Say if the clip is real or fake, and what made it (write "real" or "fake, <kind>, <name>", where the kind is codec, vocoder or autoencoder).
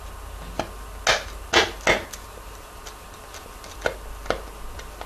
real